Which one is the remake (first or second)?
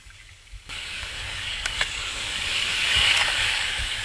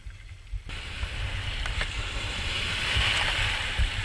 first